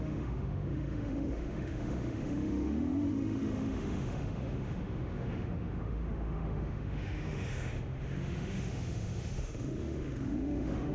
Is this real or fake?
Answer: fake